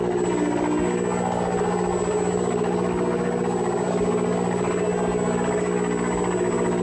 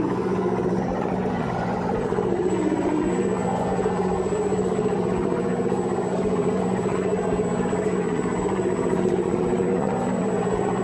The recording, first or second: first